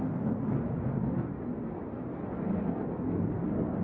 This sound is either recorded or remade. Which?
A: recorded